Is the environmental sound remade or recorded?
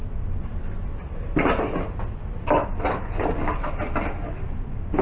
recorded